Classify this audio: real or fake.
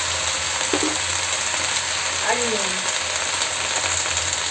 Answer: real